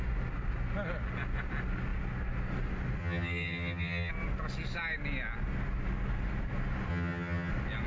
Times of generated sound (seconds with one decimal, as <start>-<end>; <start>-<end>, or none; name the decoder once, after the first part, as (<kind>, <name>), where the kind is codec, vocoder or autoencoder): 3.0-4.1 (vocoder, HiFi-GAN); 6.9-7.5